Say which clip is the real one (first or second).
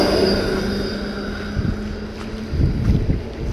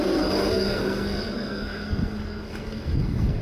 first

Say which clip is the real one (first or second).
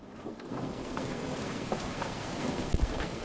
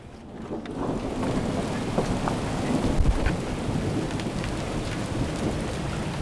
second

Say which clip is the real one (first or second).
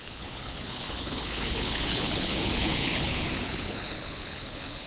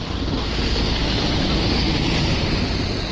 second